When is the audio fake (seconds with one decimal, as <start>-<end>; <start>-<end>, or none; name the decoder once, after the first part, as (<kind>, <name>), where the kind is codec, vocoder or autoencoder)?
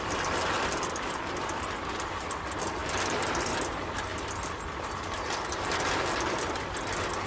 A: none